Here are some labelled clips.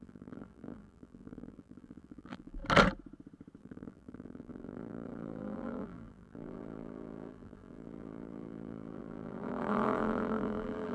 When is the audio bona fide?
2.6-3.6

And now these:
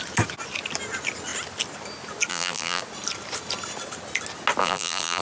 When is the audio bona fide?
0.0-2.3; 2.8-4.6

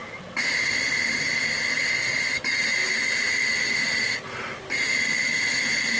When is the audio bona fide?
0.0-6.0